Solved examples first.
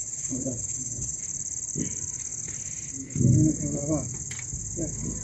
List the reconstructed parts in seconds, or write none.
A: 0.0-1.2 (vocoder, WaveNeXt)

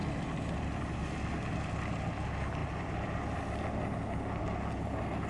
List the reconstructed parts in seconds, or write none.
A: 0.0-1.5 (vocoder, BigVGAN v2); 2.6-3.7

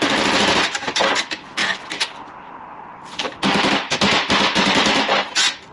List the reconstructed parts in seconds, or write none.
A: 1.6-2.8 (vocoder, BigVGAN v2); 3.2-4.0